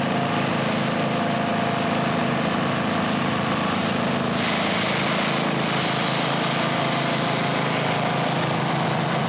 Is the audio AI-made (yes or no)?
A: no